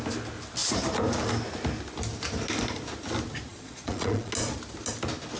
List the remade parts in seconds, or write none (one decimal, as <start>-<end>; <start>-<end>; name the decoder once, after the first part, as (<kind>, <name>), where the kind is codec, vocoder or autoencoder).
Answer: 3.5-4.3 (vocoder, Vocos)